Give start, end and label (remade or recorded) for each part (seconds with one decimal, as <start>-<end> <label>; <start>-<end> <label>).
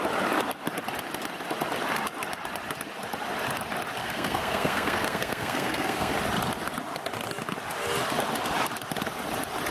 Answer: 0.0-4.0 recorded; 4.0-6.1 remade; 6.1-9.7 recorded